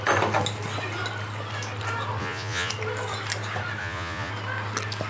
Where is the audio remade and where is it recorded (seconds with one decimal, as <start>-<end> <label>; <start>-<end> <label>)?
0.0-2.2 recorded; 2.2-2.7 remade; 2.7-3.8 recorded; 3.8-4.3 remade; 4.3-5.1 recorded